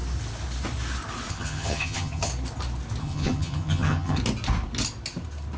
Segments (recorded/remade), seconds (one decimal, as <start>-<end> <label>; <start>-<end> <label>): 0.0-1.3 recorded; 1.3-2.3 remade; 2.3-3.0 recorded; 3.0-4.2 remade; 4.2-5.6 recorded